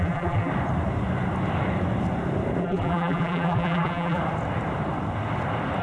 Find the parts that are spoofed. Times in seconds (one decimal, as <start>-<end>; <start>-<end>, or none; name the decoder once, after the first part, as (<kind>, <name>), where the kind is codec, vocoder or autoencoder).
0.0-0.5 (vocoder, BigVGAN v2); 2.6-4.2